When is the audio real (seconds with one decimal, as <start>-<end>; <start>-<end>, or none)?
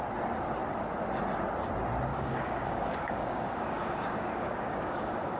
0.0-2.1